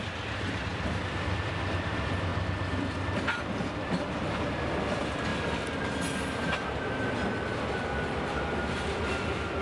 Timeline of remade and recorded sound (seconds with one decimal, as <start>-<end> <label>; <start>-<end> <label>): 0.0-0.7 recorded; 0.7-1.6 remade; 1.6-2.3 recorded; 2.3-3.2 remade; 3.2-9.6 recorded